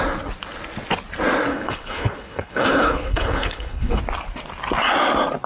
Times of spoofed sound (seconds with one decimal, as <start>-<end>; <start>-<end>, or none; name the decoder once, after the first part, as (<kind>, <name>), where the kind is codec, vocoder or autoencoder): 1.5-4.0 (codec, HILCodec)